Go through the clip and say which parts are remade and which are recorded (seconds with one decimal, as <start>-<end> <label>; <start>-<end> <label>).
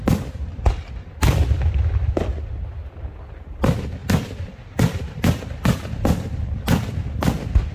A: 0.0-7.7 recorded